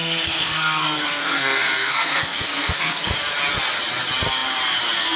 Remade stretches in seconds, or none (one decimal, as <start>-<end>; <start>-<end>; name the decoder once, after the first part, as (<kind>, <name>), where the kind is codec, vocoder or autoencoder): 0.0-3.1 (codec, SNAC)